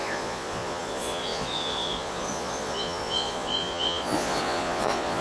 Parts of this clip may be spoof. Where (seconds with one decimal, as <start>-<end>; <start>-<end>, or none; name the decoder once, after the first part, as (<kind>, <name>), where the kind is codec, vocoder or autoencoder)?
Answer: 0.0-5.2 (vocoder, Vocos)